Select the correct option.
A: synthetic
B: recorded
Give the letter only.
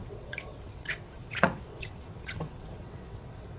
A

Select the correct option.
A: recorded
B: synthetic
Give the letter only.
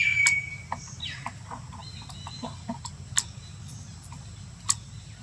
A